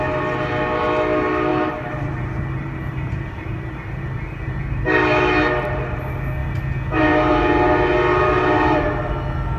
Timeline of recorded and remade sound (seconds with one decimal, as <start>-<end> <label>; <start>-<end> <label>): 0.0-1.5 recorded; 1.5-5.2 remade; 5.2-8.1 recorded; 8.1-9.1 remade; 9.1-9.6 recorded

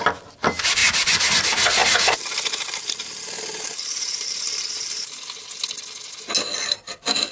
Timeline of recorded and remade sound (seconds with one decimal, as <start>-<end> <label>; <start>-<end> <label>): 0.0-1.8 recorded; 1.8-5.5 remade; 5.5-7.3 recorded

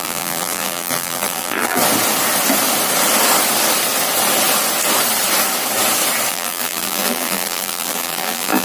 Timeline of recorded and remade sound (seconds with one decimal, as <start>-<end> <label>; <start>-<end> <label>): 0.0-1.8 remade; 1.8-6.3 recorded; 6.3-8.6 remade